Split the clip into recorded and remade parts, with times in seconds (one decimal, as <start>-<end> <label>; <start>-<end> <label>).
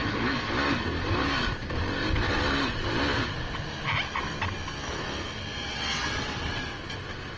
0.0-5.5 recorded; 5.5-6.8 remade; 6.8-7.4 recorded